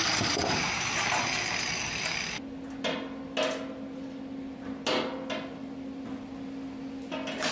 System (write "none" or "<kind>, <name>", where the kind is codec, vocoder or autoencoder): none